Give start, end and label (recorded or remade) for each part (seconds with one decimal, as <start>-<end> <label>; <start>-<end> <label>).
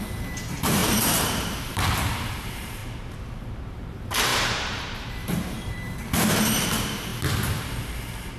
0.0-2.8 remade; 2.8-3.4 recorded; 3.4-7.1 remade; 7.1-8.4 recorded